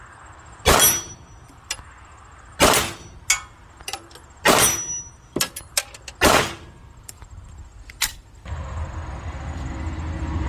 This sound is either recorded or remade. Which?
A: recorded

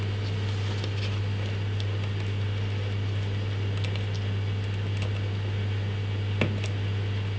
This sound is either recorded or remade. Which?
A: recorded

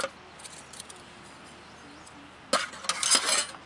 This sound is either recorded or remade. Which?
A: recorded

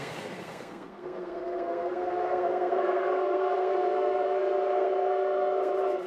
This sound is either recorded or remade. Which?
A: remade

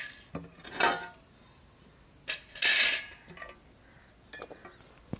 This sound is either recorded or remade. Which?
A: recorded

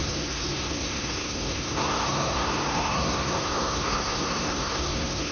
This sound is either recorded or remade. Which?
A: remade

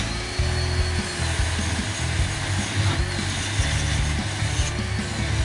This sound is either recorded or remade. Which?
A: recorded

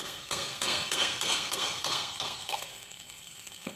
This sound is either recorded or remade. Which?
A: remade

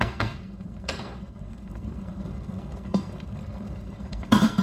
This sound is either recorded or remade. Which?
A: remade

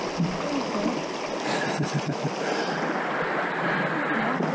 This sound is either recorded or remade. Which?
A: recorded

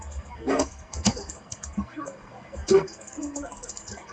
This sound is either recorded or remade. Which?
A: remade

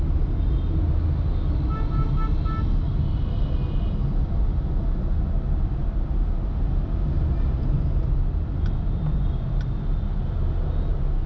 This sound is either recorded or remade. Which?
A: recorded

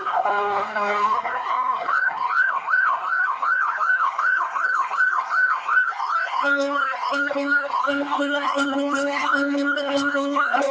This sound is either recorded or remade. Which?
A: remade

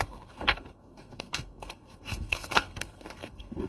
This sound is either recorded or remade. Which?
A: remade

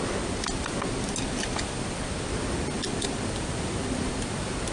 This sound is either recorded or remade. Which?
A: recorded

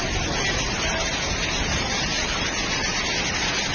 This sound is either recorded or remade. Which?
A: recorded